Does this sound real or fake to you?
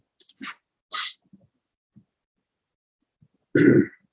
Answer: real